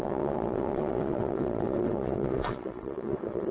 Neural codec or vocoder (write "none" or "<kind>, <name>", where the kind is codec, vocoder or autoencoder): vocoder, WaveNeXt